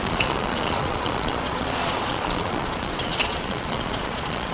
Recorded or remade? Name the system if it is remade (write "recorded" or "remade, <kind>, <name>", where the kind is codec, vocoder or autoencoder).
remade, vocoder, Vocos